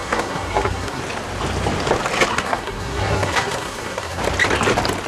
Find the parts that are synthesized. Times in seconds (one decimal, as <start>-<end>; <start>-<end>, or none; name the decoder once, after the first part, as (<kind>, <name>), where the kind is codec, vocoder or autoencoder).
0.0-1.0 (codec, SNAC); 2.3-4.2